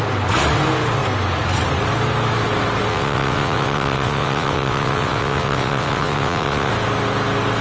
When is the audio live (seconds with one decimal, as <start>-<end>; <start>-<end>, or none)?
0.0-2.9; 6.7-7.6